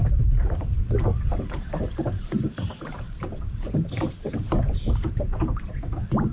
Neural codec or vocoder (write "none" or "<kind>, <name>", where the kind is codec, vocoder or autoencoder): vocoder, BigVGAN v2